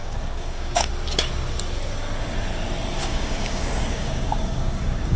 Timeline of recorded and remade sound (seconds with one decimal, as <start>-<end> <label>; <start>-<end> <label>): 0.0-0.9 remade; 0.9-3.0 recorded; 3.0-5.2 remade